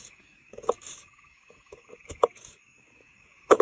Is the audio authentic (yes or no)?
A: no